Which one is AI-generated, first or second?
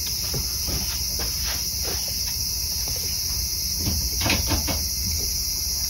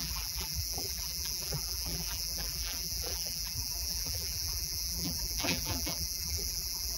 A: second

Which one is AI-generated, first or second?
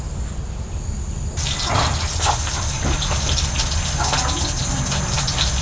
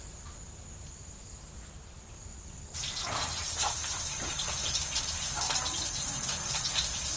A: second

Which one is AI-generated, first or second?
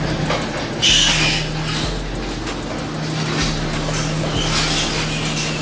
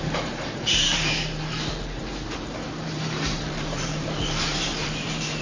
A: second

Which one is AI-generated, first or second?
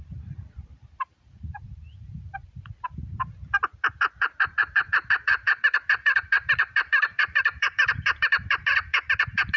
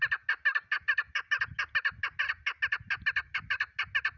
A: first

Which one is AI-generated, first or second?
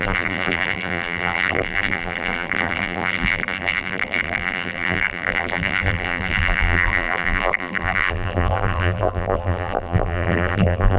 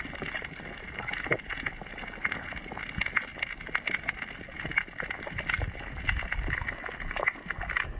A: first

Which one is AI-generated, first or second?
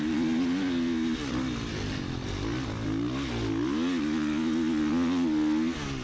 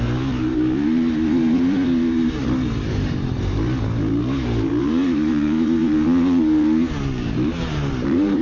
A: second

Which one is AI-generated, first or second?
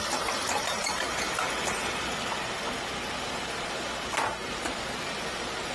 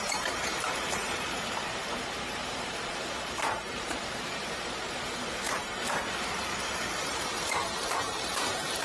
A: second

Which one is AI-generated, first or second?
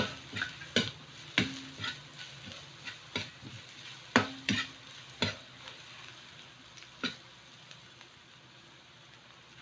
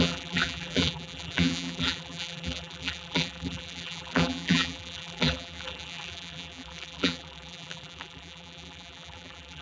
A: second